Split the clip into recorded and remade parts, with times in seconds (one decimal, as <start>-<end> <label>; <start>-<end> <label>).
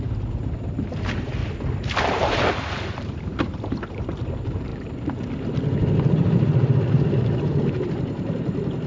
0.0-1.4 remade; 1.4-2.0 recorded; 2.0-4.7 remade; 4.7-6.9 recorded; 6.9-8.9 remade